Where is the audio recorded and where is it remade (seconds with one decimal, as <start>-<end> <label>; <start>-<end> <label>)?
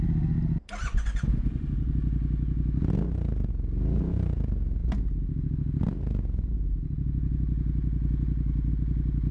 0.0-0.8 recorded; 0.8-1.9 remade; 1.9-9.3 recorded